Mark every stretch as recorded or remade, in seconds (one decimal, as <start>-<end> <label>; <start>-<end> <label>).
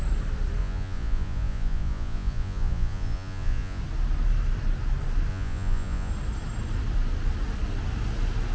0.0-0.6 recorded; 0.6-3.8 remade; 3.8-5.3 recorded; 5.3-6.1 remade; 6.1-8.5 recorded